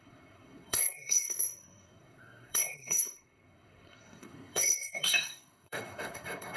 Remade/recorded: remade